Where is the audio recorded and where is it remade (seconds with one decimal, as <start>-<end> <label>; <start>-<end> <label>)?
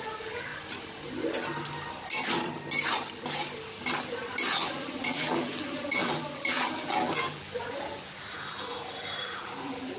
0.0-0.5 remade; 0.5-4.5 recorded; 4.5-10.0 remade